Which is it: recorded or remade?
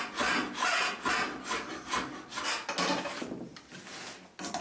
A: recorded